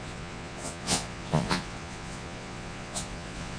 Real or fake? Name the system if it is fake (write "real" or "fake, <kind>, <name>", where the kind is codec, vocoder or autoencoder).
fake, vocoder, Vocos